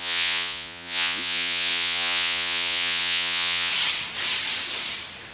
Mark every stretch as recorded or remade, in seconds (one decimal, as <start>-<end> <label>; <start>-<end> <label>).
0.0-3.7 remade; 3.7-5.3 recorded